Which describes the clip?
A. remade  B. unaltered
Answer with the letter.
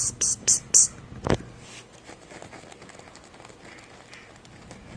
B